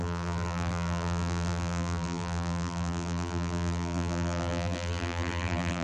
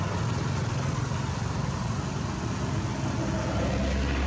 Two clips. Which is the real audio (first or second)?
second